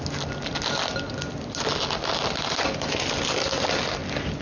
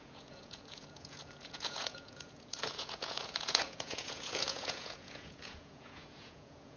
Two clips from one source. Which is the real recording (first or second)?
first